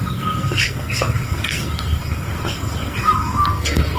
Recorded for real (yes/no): no